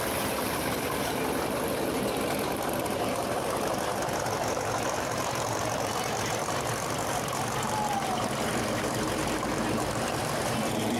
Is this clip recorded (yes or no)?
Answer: no